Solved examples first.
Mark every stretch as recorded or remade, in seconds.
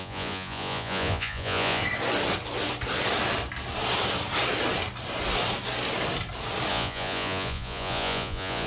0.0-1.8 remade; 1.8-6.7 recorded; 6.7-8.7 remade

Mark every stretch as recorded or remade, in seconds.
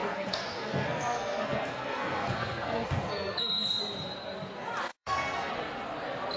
0.0-3.8 remade; 3.8-4.9 recorded; 4.9-5.5 remade; 5.5-6.4 recorded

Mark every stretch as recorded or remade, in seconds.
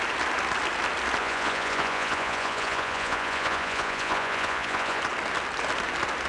0.0-1.2 recorded; 1.2-5.0 remade; 5.0-6.3 recorded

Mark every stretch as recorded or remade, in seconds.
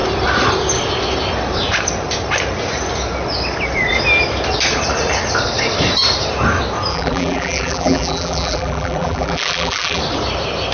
0.0-6.9 recorded; 6.9-10.0 remade; 10.0-10.7 recorded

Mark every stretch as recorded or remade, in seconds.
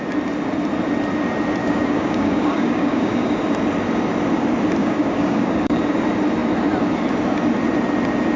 0.0-1.6 recorded; 1.6-3.4 remade; 3.4-4.8 recorded; 4.8-5.8 remade; 5.8-8.4 recorded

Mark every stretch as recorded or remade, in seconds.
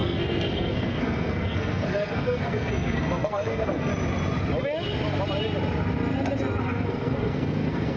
0.0-3.9 remade; 3.9-6.6 recorded; 6.6-8.0 remade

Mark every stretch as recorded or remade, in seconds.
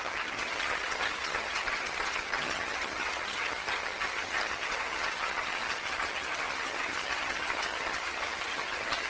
0.0-9.1 remade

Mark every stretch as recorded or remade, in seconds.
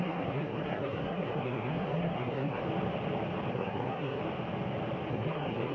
0.0-2.6 remade; 2.6-3.5 recorded; 3.5-4.2 remade; 4.2-5.1 recorded; 5.1-5.7 remade